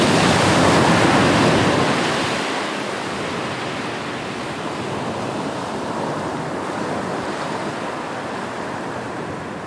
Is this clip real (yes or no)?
yes